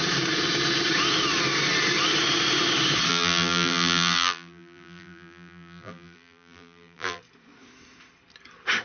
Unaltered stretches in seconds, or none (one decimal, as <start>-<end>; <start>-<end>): 0.0-3.1; 7.2-8.8